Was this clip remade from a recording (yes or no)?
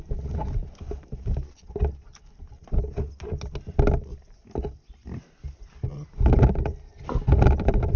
no